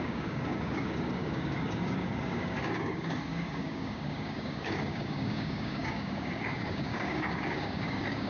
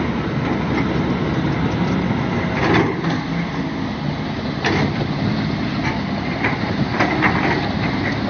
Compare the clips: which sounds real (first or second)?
second